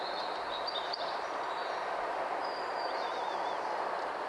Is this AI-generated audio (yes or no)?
no